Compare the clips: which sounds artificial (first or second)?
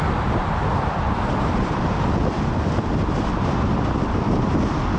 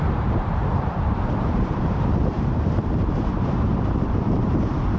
second